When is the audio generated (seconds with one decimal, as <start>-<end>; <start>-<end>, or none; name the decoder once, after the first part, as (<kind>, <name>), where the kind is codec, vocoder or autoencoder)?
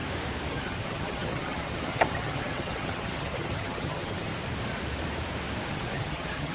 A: 0.5-4.3 (vocoder, HiFi-GAN); 5.7-6.5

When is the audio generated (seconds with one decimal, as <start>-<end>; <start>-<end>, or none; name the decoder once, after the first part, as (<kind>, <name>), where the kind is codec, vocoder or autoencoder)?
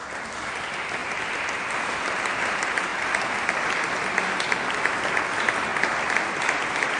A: 5.7-6.3 (vocoder, BigVGAN v2)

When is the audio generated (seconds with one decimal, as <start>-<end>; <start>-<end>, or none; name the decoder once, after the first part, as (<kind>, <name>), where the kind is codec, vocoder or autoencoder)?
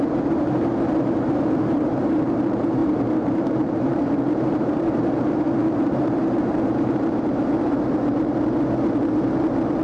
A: 0.0-7.3 (vocoder, BigVGAN v2)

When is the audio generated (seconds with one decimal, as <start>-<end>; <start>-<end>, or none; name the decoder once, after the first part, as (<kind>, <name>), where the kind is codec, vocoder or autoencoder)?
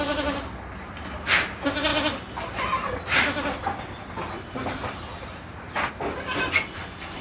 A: none